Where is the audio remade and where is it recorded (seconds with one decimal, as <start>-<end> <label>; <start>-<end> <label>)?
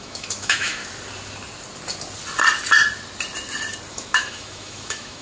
0.0-0.8 remade; 0.8-3.9 recorded; 3.9-5.2 remade